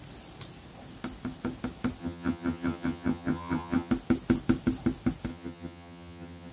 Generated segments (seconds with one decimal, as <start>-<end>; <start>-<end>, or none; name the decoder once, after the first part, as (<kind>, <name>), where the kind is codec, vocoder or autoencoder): 2.0-3.9 (vocoder, HiFi-GAN); 5.3-6.5